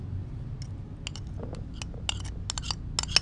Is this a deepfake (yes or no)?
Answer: no